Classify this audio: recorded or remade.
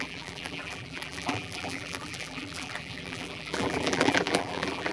remade